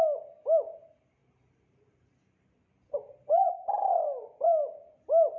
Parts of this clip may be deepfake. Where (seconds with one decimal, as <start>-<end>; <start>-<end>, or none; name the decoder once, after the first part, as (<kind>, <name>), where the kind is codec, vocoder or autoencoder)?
none